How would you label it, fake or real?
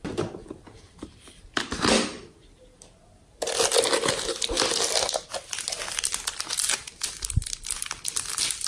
real